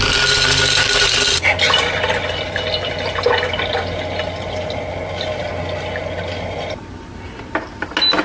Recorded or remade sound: recorded